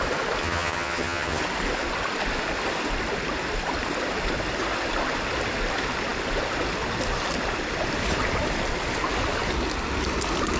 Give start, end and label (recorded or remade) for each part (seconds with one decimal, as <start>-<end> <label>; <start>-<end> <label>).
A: 0.0-0.4 recorded; 0.4-1.4 remade; 1.4-10.6 recorded